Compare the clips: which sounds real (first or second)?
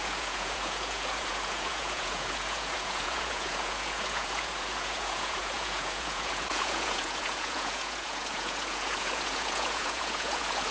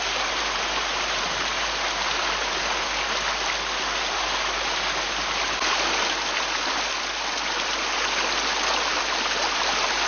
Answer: second